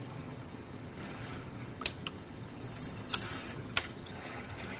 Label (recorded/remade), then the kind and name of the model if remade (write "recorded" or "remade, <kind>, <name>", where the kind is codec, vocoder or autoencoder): remade, vocoder, HiFi-GAN